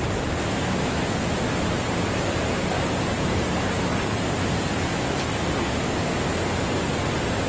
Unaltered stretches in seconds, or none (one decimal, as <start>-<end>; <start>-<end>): 0.0-3.1; 4.7-7.5